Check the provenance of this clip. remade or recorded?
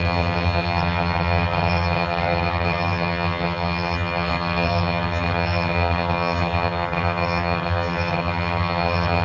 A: remade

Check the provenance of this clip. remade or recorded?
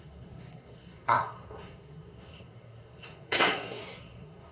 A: remade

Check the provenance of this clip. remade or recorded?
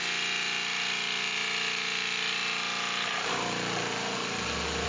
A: recorded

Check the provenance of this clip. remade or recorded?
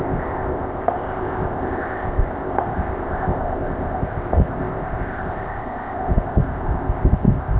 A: remade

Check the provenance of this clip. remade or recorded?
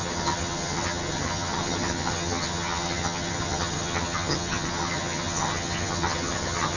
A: remade